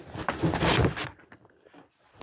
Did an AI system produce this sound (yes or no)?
no